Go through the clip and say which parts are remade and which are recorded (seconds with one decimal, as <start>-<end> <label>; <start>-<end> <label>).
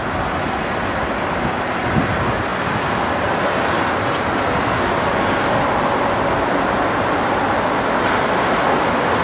0.0-9.2 recorded